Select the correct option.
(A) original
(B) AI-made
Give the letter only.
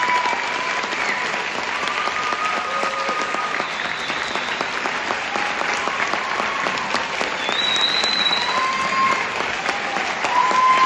A